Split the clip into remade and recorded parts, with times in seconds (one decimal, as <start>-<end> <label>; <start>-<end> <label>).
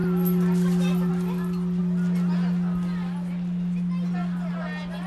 0.0-5.1 recorded